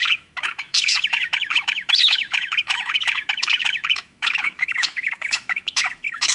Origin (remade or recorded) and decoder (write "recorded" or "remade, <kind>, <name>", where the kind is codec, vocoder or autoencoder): remade, autoencoder, DAC-VAE